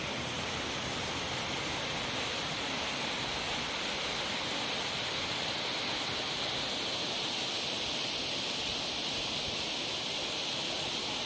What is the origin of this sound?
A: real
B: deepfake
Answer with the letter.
A